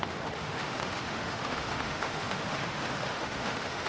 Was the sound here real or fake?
fake